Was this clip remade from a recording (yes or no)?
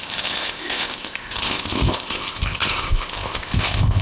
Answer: yes